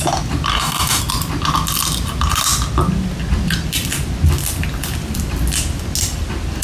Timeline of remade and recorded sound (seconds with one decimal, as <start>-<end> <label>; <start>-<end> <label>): 0.0-0.5 recorded; 0.5-1.0 remade; 1.0-6.6 recorded